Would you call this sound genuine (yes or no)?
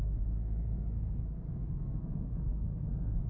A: no